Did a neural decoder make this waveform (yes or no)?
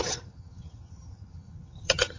yes